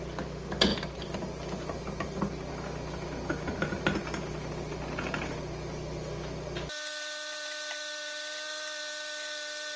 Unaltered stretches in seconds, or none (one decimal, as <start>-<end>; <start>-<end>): 0.0-9.8